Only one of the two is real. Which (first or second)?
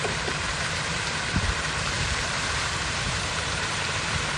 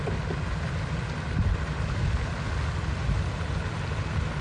second